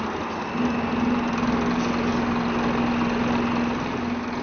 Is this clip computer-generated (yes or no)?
no